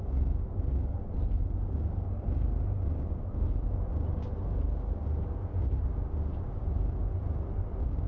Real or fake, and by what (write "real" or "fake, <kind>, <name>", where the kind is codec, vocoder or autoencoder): real